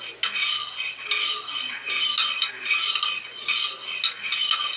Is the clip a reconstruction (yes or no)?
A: no